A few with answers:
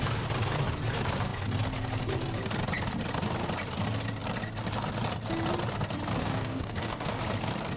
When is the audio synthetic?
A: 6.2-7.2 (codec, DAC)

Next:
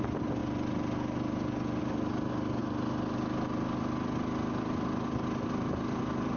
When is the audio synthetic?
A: none